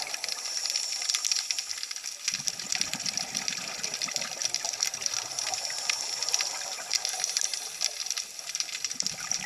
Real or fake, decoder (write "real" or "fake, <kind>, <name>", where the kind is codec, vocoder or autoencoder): real